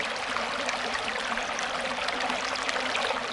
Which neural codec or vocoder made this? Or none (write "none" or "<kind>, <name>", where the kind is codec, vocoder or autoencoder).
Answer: none